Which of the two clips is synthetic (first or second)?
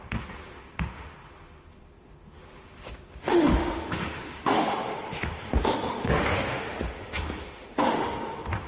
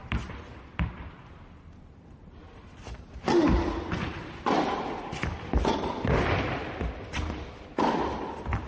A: first